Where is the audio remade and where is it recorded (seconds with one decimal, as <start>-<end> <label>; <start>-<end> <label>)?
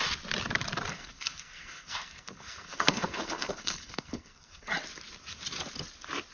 0.0-0.9 recorded; 0.9-4.7 remade; 4.7-6.3 recorded